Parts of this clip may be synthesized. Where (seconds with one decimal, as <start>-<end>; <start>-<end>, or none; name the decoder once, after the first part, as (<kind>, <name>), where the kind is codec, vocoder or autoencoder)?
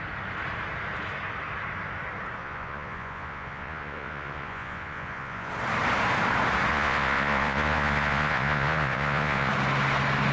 2.4-5.5 (vocoder, Vocos); 6.7-9.5